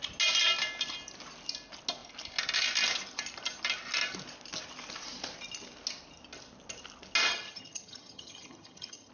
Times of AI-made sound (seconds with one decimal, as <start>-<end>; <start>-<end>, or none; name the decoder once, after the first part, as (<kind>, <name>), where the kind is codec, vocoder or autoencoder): 7.3-9.1 (vocoder, HiFi-GAN)